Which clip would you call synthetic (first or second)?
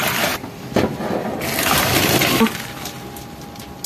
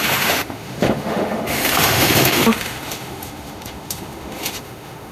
second